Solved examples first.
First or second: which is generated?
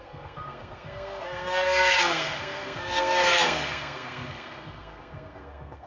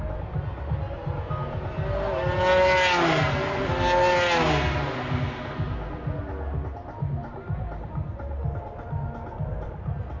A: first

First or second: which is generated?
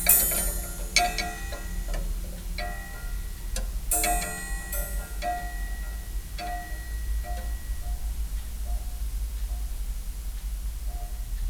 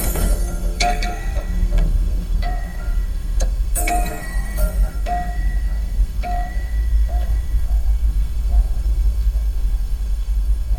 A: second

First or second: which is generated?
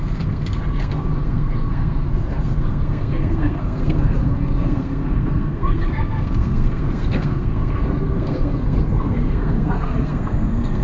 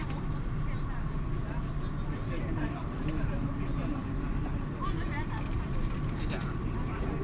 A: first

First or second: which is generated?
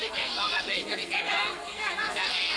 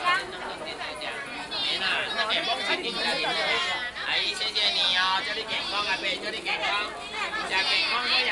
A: first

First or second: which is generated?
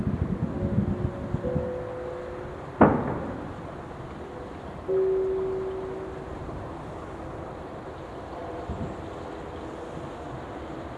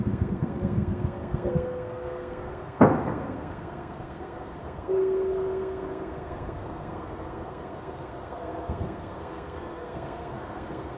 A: second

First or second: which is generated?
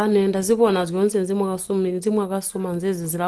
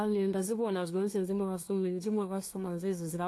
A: second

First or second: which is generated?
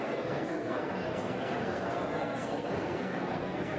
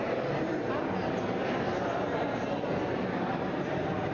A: first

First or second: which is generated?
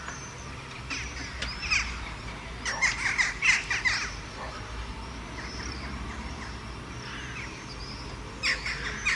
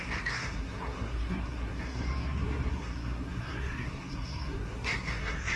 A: second